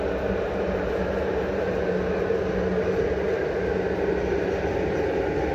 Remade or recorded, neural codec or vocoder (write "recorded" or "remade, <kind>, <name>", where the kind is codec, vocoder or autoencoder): recorded